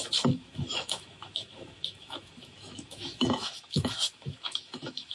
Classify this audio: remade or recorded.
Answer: remade